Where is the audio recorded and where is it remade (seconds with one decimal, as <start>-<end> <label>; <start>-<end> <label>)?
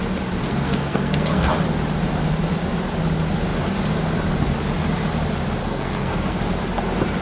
0.0-0.4 recorded; 0.4-1.5 remade; 1.5-5.6 recorded; 5.6-6.4 remade; 6.4-7.2 recorded